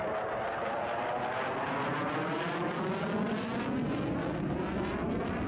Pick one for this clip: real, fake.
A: real